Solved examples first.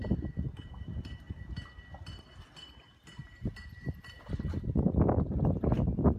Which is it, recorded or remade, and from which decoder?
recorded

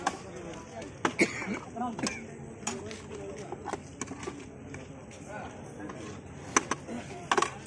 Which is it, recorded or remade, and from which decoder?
recorded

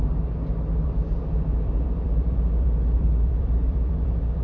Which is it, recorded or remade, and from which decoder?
remade, vocoder, BigVGAN v2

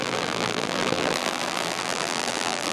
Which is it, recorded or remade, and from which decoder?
remade, vocoder, BigVGAN v2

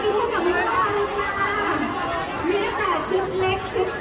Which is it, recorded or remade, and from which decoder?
recorded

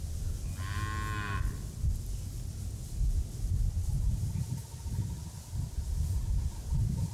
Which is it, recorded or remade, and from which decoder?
recorded